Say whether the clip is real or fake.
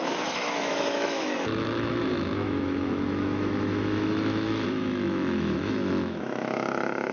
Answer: fake